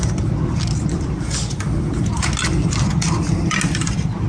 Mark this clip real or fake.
real